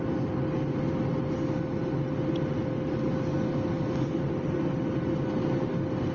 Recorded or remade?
recorded